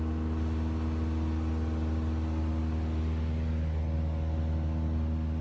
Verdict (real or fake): real